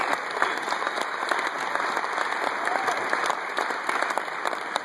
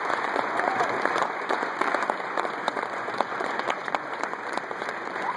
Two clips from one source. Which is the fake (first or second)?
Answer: second